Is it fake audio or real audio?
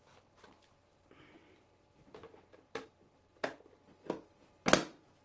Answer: real